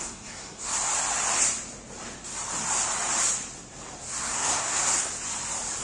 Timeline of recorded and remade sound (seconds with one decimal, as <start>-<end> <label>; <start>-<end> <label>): 0.0-0.7 remade; 0.7-4.2 recorded; 4.2-5.1 remade; 5.1-5.8 recorded